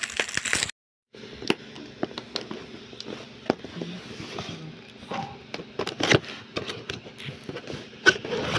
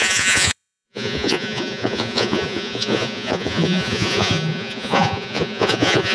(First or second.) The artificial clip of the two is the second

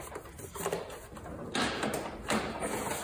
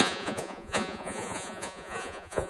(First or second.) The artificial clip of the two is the second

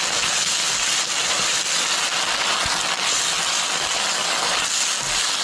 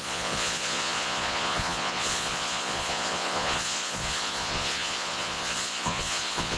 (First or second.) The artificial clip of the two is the second